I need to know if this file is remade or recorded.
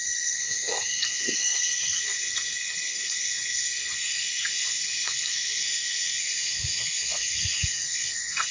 remade